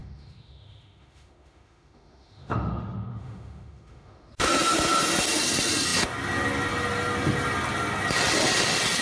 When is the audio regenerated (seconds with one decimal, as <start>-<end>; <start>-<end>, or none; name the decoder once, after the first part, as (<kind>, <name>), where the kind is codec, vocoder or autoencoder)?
0.0-4.3 (autoencoder, DAC-VAE)